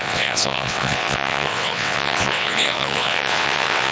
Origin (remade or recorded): remade